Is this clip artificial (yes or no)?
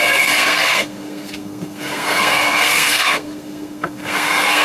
yes